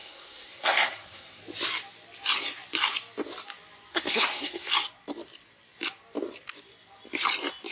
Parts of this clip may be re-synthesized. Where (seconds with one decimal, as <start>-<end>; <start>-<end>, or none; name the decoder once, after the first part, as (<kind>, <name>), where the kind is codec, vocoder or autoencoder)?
0.0-1.4 (codec, SNAC); 3.9-4.7